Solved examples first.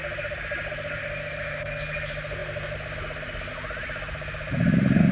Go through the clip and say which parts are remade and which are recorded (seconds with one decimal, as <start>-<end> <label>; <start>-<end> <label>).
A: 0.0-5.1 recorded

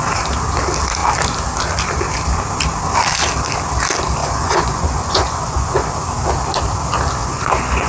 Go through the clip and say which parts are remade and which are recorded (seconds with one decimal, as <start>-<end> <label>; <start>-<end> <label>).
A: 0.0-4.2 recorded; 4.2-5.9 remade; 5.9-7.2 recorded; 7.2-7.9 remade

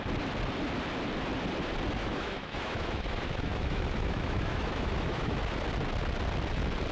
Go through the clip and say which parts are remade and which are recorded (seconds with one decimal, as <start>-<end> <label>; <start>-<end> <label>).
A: 0.0-2.0 recorded; 2.0-5.4 remade; 5.4-6.9 recorded